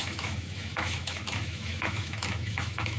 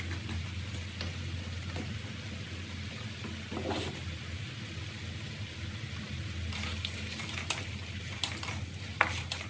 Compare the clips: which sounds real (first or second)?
second